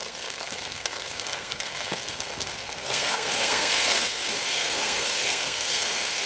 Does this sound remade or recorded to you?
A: remade